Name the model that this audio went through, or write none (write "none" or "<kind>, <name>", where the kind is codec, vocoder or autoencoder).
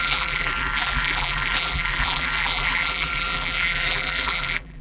vocoder, BigVGAN v2